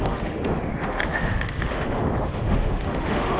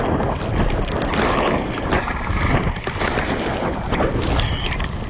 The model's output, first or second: first